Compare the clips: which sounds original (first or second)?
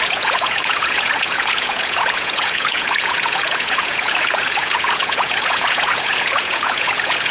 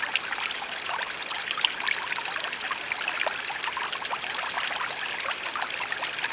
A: second